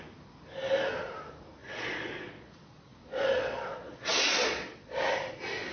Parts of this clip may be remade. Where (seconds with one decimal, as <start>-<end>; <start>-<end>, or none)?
1.6-5.0